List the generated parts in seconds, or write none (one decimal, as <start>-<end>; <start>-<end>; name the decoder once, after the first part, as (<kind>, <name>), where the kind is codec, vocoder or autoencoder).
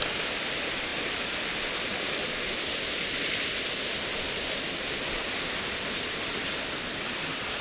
none